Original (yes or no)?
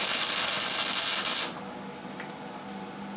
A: yes